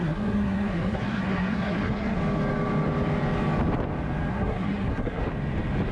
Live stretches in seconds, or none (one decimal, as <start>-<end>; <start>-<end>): 2.2-4.3; 5.2-5.9

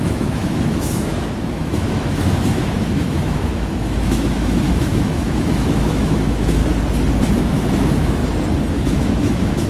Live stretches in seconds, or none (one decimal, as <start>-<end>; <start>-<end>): 6.6-7.4; 8.2-8.7

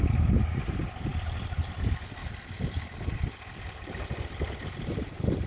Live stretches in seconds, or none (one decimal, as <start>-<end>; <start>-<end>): 0.0-5.5

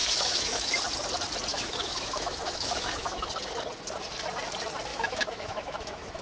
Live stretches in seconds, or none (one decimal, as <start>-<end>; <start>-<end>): 0.7-1.5; 3.3-4.9

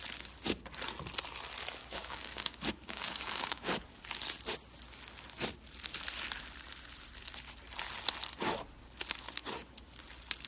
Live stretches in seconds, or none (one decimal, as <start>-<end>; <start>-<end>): 0.0-1.8; 4.0-10.5

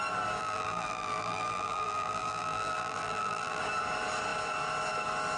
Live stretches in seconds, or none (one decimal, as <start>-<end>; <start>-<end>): 0.0-0.4; 3.6-5.4